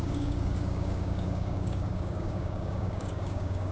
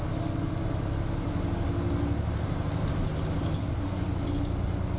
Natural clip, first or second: second